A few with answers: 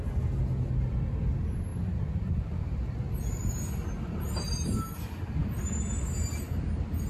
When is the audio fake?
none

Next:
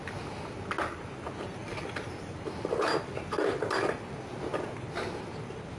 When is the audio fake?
none

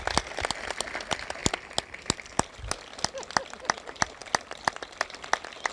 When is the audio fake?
none

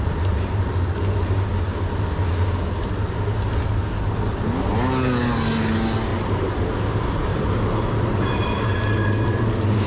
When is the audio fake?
6.1-6.7; 7.3-8.7